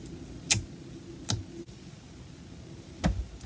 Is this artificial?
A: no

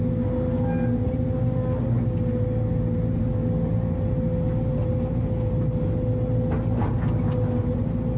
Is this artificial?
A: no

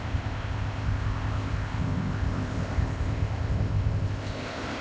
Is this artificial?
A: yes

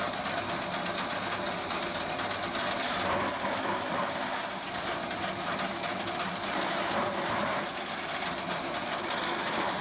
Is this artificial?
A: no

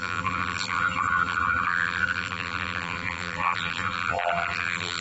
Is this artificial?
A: yes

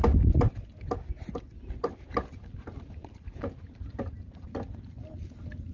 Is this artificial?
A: no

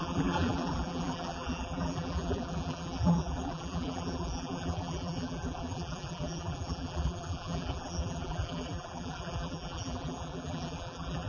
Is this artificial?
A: yes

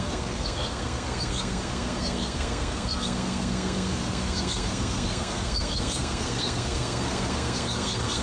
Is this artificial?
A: yes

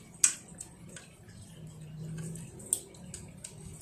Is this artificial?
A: no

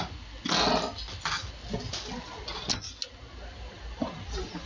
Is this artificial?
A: no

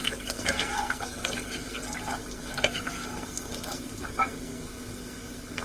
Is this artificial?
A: yes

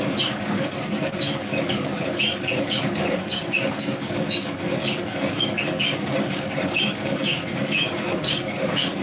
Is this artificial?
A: yes